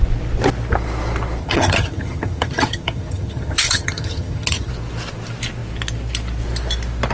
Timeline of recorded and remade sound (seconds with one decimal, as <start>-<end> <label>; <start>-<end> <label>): 0.0-1.4 recorded; 1.4-4.7 remade; 4.7-7.1 recorded